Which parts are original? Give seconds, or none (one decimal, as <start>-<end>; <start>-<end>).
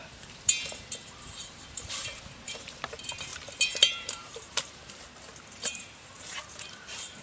none